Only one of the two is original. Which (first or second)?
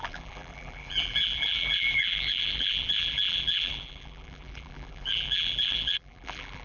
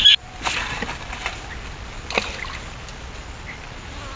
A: second